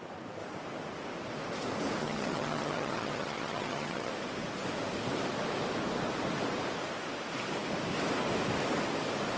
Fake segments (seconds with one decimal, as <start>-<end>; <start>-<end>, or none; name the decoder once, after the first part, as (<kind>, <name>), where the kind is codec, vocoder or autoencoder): 2.0-4.1 (vocoder, HiFi-GAN)